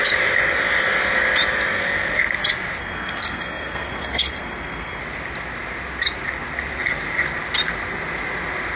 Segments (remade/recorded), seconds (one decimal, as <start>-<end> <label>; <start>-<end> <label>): 0.0-2.8 recorded; 2.8-5.0 remade; 5.0-8.8 recorded